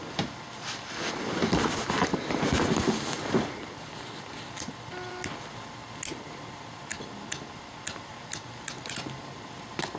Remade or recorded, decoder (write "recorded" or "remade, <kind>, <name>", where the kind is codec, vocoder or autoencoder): recorded